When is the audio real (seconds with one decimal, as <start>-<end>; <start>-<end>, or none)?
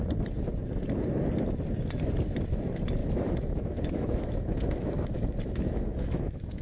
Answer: 0.0-3.0